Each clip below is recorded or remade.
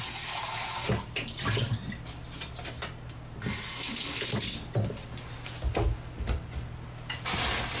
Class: recorded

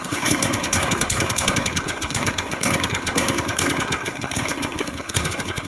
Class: remade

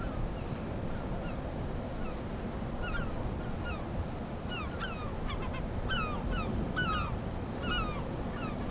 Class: recorded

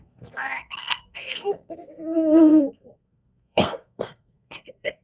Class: remade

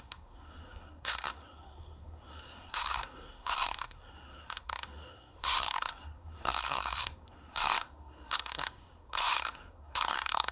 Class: remade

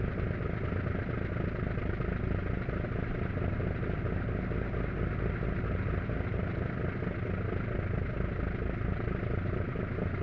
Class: recorded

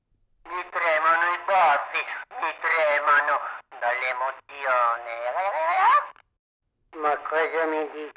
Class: recorded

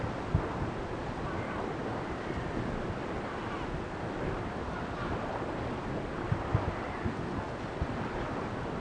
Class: recorded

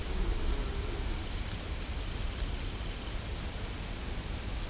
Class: recorded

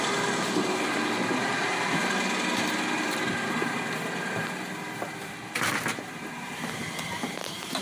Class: recorded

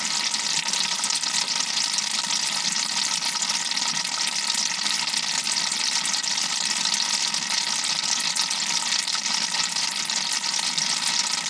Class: recorded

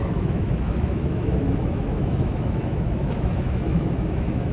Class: remade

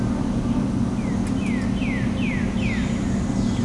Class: recorded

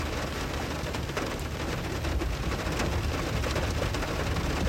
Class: recorded